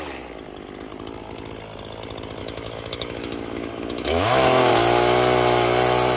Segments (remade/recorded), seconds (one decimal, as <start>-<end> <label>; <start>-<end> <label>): 0.0-2.4 recorded; 2.4-4.7 remade; 4.7-6.2 recorded